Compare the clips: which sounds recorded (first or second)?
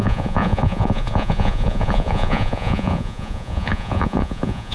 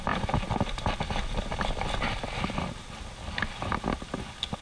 second